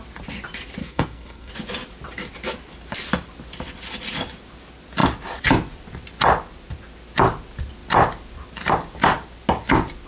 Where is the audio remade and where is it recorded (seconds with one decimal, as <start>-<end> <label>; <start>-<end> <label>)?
0.0-0.8 recorded; 0.8-1.5 remade; 1.5-10.1 recorded